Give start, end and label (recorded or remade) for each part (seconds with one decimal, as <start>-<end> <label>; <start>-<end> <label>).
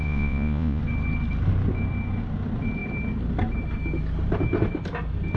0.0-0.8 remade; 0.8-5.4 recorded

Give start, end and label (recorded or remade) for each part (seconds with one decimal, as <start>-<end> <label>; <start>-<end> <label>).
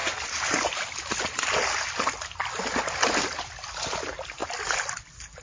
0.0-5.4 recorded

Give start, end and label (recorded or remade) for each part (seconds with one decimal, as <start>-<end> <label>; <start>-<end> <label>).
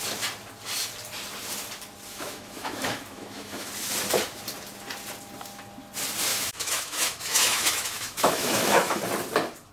0.0-2.1 recorded; 2.1-3.7 remade; 3.7-6.3 recorded; 6.3-9.0 remade; 9.0-9.7 recorded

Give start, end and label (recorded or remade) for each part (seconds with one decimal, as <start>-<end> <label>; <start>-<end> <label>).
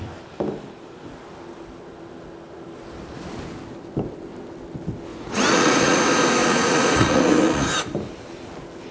0.0-5.1 recorded; 5.1-6.0 remade; 6.0-6.4 recorded; 6.4-7.7 remade; 7.7-8.9 recorded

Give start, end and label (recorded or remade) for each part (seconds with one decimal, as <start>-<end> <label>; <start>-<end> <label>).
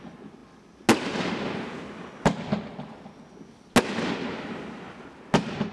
0.0-5.7 recorded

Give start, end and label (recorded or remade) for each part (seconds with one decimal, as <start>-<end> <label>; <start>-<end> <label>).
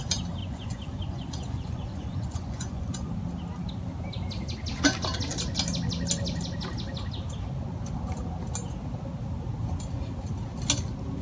0.0-0.4 recorded; 0.4-3.1 remade; 3.1-11.2 recorded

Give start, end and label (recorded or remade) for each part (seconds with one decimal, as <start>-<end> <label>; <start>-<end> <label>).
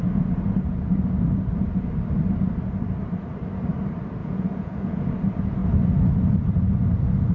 0.0-4.2 recorded; 4.2-5.1 remade; 5.1-7.3 recorded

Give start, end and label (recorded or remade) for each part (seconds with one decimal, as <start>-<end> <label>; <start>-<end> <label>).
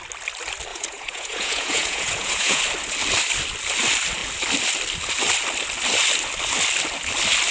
0.0-0.7 recorded; 0.7-2.6 remade; 2.6-7.5 recorded